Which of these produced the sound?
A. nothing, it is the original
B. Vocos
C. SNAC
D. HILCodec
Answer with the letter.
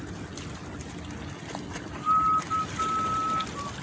A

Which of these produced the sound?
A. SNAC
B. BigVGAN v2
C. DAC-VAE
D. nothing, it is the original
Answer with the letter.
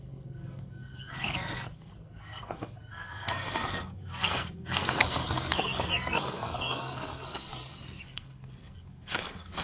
A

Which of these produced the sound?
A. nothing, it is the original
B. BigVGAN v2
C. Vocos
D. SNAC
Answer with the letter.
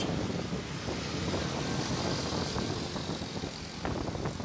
A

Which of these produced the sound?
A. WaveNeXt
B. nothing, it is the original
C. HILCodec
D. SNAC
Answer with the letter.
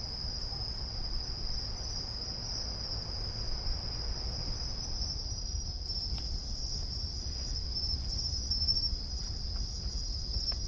B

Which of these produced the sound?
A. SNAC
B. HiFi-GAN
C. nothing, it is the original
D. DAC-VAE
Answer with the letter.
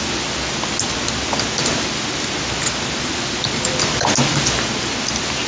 C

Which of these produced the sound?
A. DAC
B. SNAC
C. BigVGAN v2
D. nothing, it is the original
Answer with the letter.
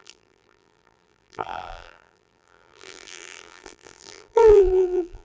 C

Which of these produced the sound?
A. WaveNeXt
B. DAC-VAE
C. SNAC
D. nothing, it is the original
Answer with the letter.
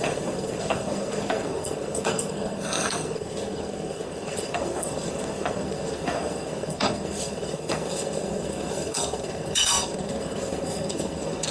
C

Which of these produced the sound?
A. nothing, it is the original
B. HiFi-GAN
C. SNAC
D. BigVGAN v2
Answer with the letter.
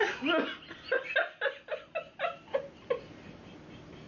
A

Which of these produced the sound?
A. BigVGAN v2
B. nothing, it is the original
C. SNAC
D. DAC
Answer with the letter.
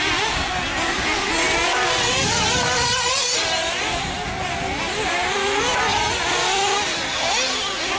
B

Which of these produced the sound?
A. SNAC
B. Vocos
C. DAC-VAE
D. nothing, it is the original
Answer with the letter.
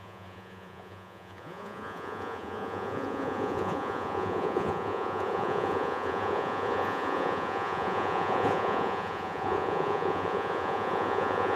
B